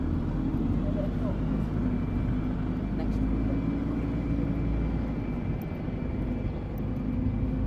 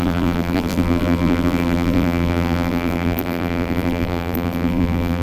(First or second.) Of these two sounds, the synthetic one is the second